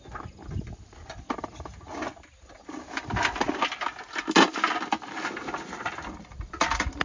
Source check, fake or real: real